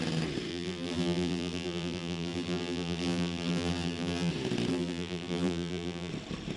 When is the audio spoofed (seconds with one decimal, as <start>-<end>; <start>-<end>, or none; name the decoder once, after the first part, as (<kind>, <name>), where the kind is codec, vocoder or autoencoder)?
0.5-4.3 (vocoder, BigVGAN v2); 4.7-6.1